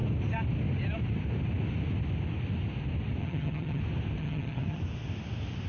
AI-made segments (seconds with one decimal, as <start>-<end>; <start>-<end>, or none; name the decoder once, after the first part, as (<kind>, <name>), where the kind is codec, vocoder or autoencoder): 3.2-3.8 (vocoder, HiFi-GAN); 4.2-4.8